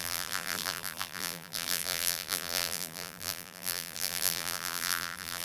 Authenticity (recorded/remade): remade